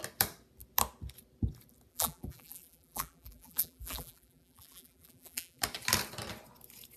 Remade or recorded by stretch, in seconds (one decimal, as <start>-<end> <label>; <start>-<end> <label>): 0.0-1.9 recorded; 1.9-5.6 remade; 5.6-7.0 recorded